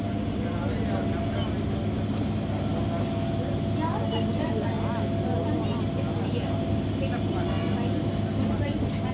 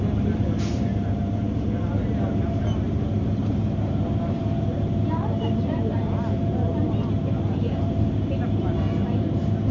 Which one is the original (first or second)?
first